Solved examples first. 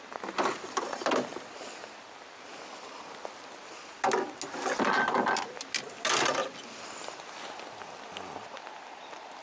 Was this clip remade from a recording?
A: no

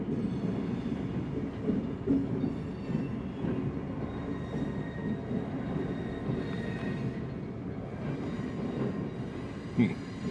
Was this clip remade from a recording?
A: no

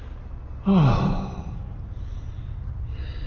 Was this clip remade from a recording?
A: no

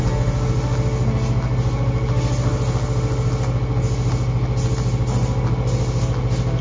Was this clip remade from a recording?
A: no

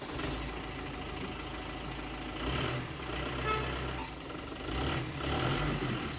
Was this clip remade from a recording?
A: no